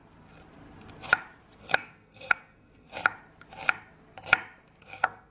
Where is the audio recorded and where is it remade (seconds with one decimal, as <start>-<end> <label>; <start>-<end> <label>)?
0.0-1.6 recorded; 1.6-2.9 remade; 2.9-4.8 recorded; 4.8-5.3 remade